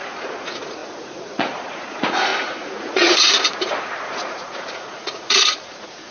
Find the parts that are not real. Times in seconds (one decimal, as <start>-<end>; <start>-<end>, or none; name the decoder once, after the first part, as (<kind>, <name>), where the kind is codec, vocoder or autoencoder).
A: 0.0-6.1 (vocoder, Vocos)